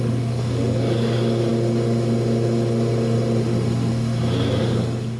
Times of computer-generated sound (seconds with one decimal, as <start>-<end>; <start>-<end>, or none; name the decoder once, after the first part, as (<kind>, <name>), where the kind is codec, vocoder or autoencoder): 0.0-1.5 (codec, DAC); 4.6-5.2